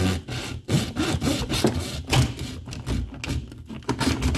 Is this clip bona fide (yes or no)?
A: yes